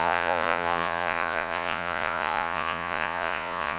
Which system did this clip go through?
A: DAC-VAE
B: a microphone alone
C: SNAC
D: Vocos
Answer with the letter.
D